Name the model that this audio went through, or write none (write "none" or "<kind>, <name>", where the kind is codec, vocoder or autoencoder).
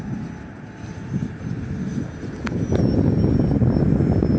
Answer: none